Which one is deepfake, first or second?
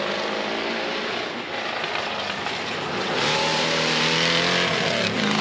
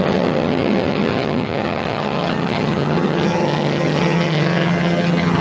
second